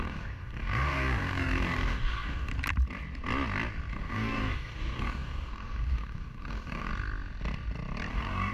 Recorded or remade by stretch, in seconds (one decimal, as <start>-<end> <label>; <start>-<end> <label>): 0.0-2.5 remade; 2.5-3.9 recorded; 3.9-6.9 remade; 6.9-8.1 recorded; 8.1-8.5 remade